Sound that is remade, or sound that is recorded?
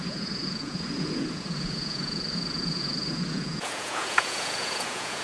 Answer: remade